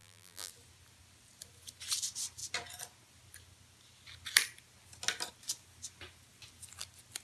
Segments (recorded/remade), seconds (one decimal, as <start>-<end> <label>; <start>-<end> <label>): 0.0-0.5 remade; 0.5-7.2 recorded